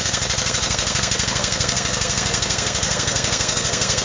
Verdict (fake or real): fake